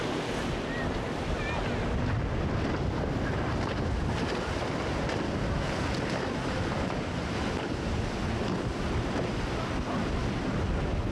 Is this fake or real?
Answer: real